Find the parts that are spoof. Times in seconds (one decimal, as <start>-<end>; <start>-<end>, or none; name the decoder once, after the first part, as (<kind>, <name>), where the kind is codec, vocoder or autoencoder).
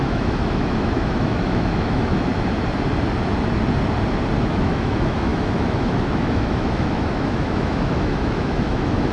0.0-2.3 (autoencoder, DAC-VAE); 4.5-9.1